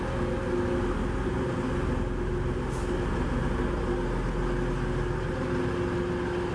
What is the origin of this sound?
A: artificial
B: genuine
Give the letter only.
B